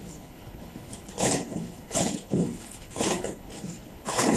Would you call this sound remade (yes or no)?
yes